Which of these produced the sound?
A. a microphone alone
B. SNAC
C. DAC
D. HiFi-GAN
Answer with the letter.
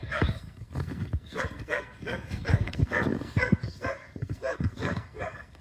B